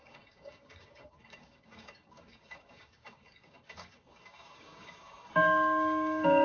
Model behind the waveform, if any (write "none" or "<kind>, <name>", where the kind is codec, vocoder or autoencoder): codec, DAC